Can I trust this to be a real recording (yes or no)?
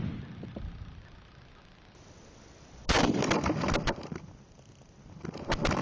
yes